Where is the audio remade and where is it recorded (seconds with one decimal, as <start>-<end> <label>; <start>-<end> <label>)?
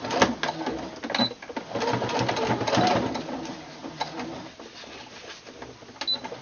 0.0-6.4 recorded